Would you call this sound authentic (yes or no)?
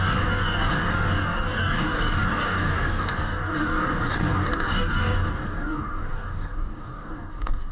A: no